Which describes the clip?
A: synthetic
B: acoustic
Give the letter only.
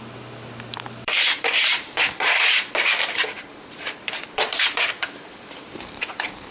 A